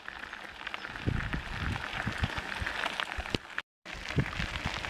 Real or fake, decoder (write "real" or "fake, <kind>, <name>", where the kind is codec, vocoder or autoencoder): real